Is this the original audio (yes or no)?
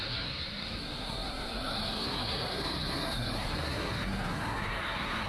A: no